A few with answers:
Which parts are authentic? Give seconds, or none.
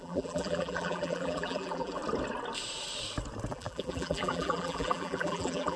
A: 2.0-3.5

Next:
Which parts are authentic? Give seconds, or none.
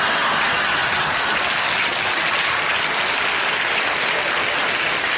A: 0.0-5.2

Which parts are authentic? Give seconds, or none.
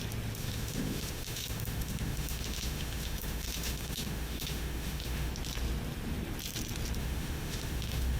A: 0.0-0.4; 5.3-7.0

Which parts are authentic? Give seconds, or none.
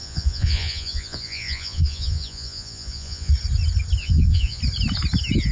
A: 3.3-4.0; 4.6-5.5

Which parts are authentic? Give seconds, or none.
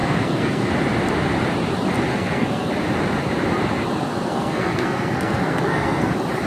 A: 0.7-2.1; 2.7-4.1; 6.1-6.5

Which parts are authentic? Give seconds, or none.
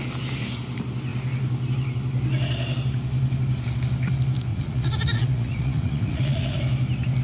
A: 0.0-4.5; 6.6-7.2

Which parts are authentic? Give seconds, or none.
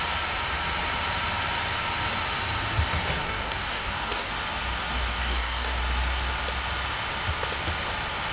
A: 0.0-3.2; 4.3-5.2; 5.8-8.3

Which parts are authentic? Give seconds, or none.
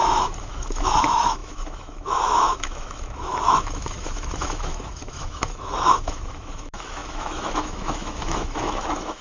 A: none